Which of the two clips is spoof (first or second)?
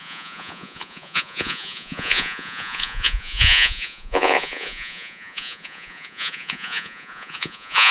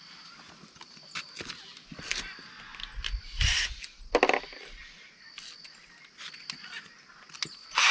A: first